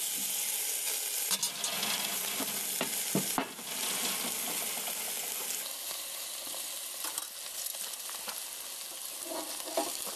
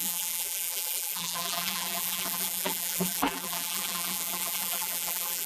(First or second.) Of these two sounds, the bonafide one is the first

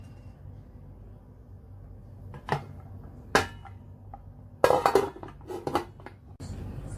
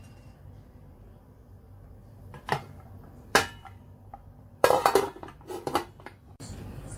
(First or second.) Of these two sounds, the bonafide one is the first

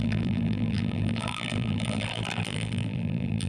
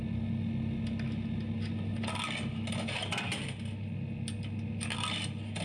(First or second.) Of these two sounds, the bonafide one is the second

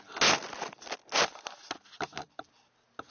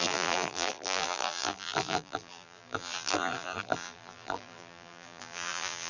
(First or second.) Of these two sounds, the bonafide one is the first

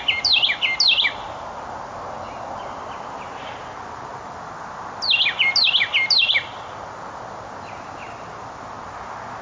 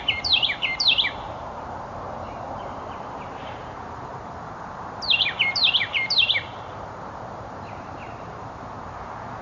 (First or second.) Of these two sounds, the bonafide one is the first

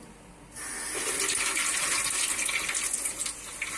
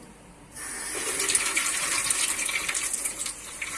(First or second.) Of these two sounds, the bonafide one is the first